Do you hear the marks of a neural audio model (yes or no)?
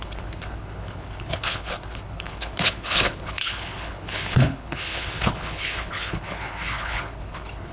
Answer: yes